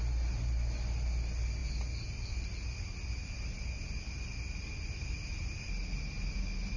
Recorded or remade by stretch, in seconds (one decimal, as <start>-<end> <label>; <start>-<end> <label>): 0.0-6.8 recorded